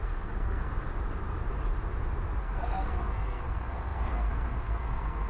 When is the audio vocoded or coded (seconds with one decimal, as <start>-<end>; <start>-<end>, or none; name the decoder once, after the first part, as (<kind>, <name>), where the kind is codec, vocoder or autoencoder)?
0.0-0.7 (codec, SNAC); 2.4-5.3